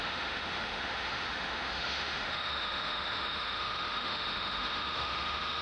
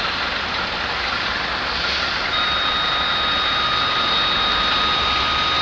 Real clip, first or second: second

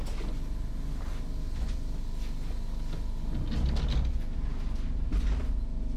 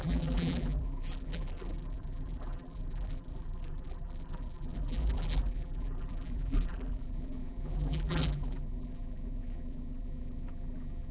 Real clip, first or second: first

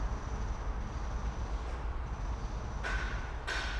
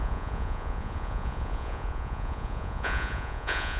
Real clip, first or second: first